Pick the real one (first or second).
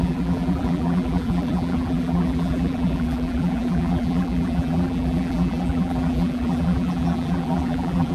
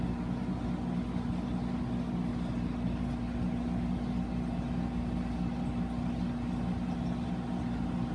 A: second